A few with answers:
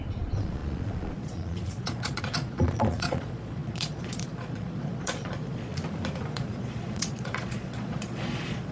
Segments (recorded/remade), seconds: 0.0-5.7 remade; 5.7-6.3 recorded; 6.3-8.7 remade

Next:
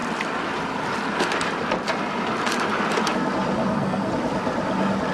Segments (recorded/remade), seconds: 0.0-3.6 recorded; 3.6-4.1 remade; 4.1-5.1 recorded

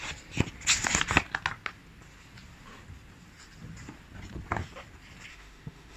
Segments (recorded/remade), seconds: 0.0-5.3 recorded; 5.3-6.0 remade

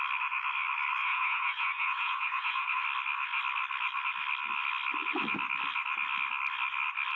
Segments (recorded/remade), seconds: 0.0-1.0 recorded; 1.0-2.8 remade; 2.8-7.2 recorded

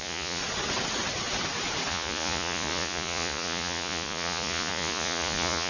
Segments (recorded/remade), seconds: 0.0-0.4 remade; 0.4-1.9 recorded; 1.9-5.7 remade

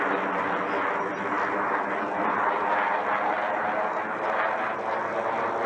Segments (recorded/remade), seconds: 0.0-5.7 recorded

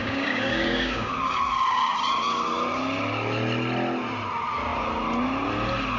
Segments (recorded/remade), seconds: 0.0-1.1 remade; 1.1-6.0 recorded

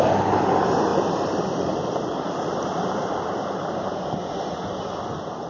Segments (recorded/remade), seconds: 0.0-0.9 recorded; 0.9-4.2 remade; 4.2-5.5 recorded